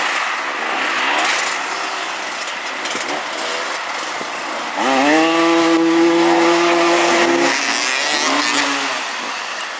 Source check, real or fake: real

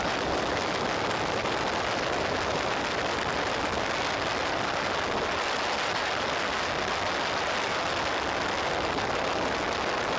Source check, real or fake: real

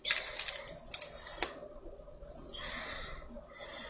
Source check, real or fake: real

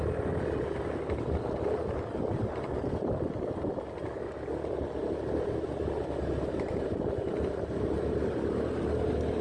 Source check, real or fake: real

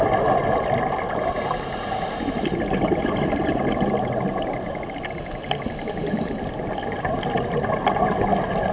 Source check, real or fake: real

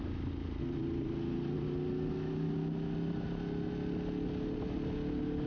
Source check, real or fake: real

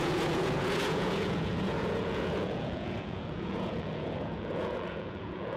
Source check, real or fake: fake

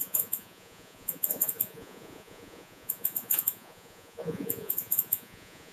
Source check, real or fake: fake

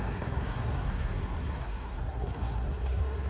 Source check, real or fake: fake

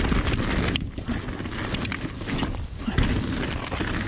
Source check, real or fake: real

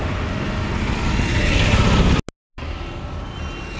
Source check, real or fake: real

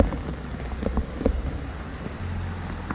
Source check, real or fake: real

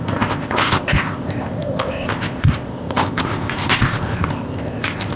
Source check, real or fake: fake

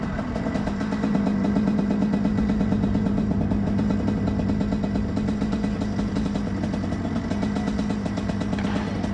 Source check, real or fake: real